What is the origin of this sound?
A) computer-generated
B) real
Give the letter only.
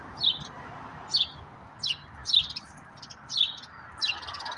B